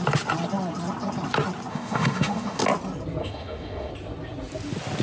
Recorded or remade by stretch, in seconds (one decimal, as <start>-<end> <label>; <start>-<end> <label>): 0.0-1.7 recorded; 1.7-2.6 remade; 2.6-3.2 recorded; 3.2-3.9 remade; 3.9-5.0 recorded